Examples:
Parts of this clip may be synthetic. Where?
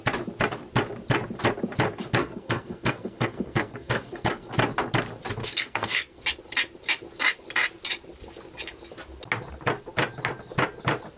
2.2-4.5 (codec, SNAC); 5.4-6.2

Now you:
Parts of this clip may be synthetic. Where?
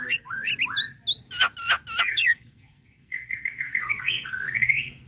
0.0-0.5 (codec, SNAC); 2.0-5.1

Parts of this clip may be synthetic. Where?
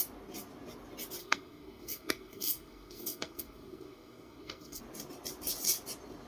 1.2-4.8 (codec, SNAC)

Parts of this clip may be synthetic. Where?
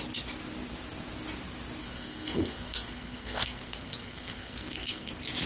1.8-5.1 (codec, SNAC)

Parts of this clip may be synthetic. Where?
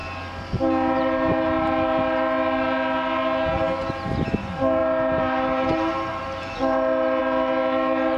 none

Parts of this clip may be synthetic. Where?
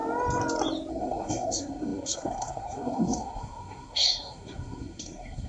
0.9-5.5 (codec, SNAC)